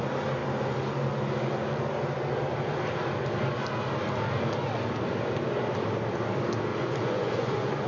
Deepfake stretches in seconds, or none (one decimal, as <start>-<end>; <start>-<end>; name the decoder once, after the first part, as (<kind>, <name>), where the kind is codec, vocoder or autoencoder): 6.7-7.9 (vocoder, Vocos)

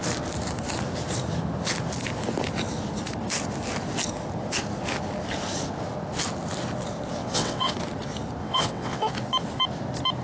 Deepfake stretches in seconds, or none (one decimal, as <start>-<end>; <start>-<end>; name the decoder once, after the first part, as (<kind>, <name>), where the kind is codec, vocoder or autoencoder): 7.2-7.7 (vocoder, WaveNeXt); 8.4-9.1

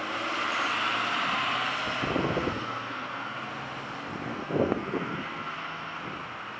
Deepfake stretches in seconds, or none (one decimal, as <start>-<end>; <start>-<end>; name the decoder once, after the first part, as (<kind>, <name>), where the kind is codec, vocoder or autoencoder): 2.2-3.5 (codec, SNAC); 4.3-6.0

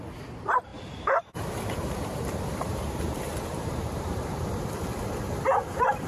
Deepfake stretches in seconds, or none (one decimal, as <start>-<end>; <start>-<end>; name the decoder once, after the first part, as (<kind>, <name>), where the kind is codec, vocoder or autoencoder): 0.7-4.4 (vocoder, BigVGAN v2)

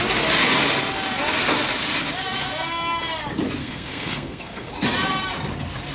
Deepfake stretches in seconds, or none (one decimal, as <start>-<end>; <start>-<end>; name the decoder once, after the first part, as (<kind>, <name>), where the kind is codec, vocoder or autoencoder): 3.6-4.7 (codec, SNAC)

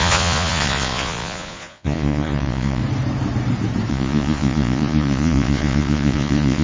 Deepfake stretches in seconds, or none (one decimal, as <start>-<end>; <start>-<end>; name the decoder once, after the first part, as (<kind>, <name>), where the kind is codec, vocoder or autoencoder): 0.0-2.8 (vocoder, Vocos); 3.9-6.6

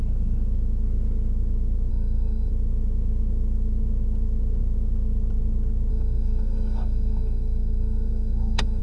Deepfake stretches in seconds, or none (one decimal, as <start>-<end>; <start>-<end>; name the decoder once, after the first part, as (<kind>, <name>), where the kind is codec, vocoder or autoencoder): 1.9-2.5 (codec, SNAC); 5.9-8.8

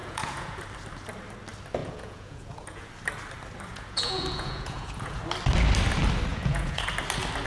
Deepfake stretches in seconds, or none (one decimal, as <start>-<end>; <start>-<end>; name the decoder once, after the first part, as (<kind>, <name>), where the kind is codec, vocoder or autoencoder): 0.0-0.6 (vocoder, Vocos); 1.8-2.9; 3.7-5.2; 6.3-6.9